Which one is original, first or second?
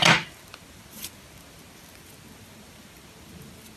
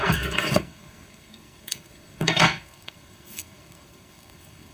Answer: first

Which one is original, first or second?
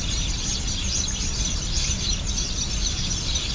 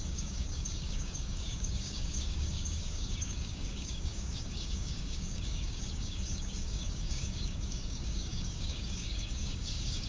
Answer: first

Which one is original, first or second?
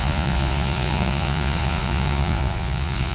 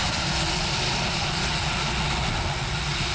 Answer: second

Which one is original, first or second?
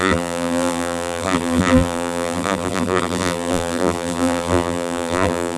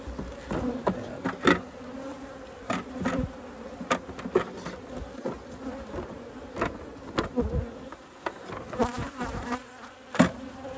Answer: second